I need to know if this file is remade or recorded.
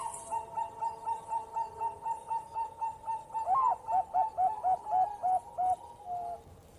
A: recorded